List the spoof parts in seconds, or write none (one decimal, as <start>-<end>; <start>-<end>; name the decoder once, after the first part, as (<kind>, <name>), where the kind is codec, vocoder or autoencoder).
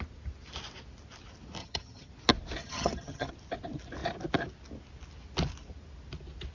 1.6-2.1 (vocoder, HiFi-GAN); 2.6-3.3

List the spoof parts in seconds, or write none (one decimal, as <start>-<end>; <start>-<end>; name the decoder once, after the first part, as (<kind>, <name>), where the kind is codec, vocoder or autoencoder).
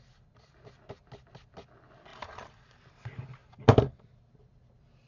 2.1-2.8 (vocoder, BigVGAN v2); 3.4-4.0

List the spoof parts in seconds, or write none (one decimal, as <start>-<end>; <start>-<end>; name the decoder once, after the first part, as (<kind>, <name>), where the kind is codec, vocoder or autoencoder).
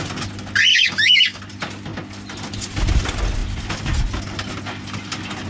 0.7-1.4 (codec, DAC)